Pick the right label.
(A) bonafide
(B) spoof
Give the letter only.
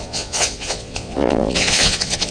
B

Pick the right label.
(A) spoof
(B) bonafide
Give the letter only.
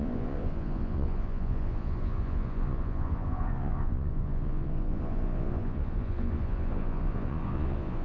A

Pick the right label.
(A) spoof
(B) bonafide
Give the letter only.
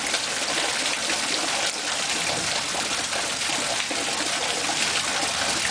B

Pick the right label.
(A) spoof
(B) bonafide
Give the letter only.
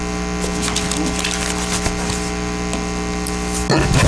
B